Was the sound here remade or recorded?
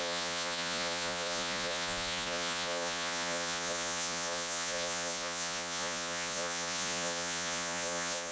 remade